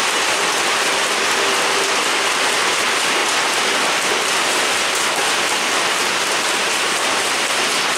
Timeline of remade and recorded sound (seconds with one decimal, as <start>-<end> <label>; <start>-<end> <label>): 0.0-8.0 recorded